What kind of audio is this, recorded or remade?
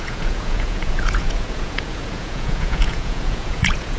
remade